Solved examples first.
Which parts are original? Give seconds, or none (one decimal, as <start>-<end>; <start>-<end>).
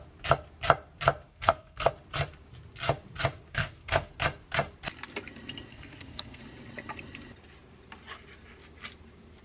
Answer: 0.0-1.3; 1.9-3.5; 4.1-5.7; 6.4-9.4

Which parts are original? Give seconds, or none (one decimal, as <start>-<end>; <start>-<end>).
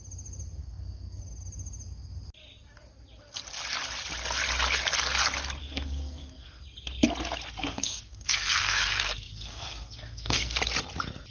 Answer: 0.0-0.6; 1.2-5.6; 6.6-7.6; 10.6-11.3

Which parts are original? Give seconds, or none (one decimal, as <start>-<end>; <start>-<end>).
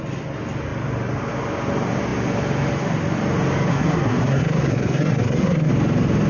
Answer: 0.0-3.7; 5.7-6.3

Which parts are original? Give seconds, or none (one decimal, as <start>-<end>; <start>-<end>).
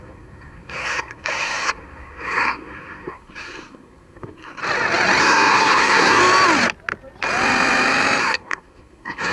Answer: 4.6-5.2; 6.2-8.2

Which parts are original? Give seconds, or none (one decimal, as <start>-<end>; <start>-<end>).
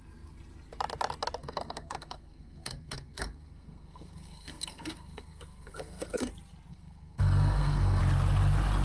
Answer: 0.0-1.4; 6.3-6.7; 8.0-8.8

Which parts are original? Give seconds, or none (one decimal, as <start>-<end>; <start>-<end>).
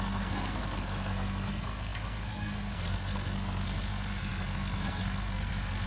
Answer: none